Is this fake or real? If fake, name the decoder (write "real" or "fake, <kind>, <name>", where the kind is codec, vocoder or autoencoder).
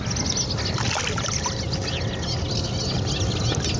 real